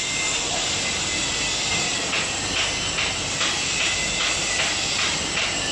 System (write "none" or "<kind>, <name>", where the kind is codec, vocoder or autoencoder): none